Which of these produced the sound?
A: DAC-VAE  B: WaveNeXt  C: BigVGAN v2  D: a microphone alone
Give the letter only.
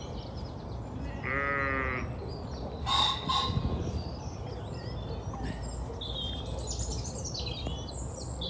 D